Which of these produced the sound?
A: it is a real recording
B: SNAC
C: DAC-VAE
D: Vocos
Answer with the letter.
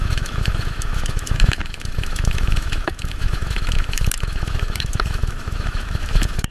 C